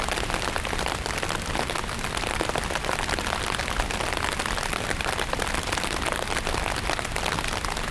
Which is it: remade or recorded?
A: recorded